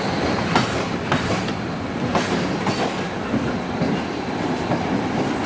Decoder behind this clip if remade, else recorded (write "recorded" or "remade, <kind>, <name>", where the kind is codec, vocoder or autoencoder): recorded